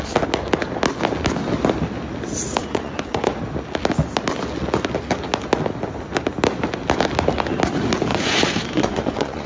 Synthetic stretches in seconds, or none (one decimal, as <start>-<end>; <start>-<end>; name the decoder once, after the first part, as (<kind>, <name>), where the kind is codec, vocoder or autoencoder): 2.6-3.4 (vocoder, Vocos); 8.1-9.5